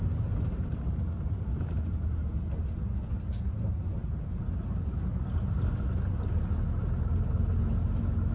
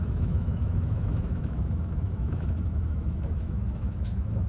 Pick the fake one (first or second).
second